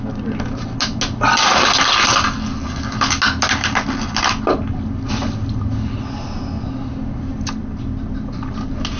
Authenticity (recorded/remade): recorded